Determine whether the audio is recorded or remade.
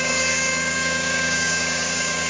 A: remade